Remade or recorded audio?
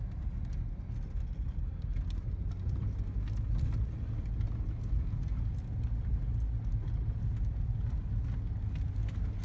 recorded